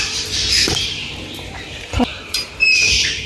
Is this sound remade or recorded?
remade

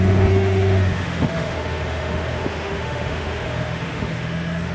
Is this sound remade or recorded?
remade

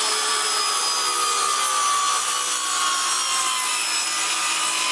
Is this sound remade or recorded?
recorded